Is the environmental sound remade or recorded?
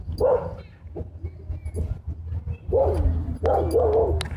recorded